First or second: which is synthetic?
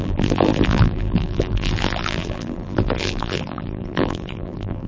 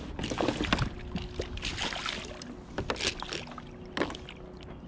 first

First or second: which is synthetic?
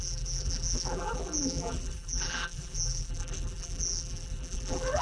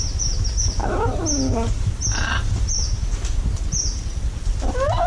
first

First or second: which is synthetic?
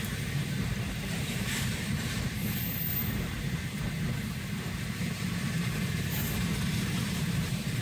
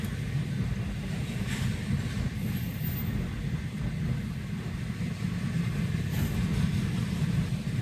first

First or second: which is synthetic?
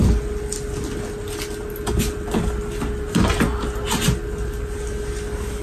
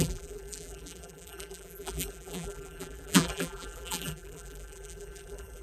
second